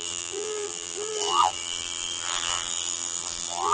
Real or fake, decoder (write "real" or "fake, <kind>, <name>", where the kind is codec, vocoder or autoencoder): fake, vocoder, BigVGAN v2